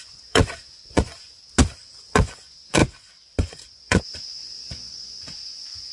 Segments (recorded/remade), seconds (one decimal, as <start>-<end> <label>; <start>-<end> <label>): 0.0-1.3 remade; 1.3-1.8 recorded; 1.8-2.8 remade; 2.8-3.4 recorded; 3.4-5.9 remade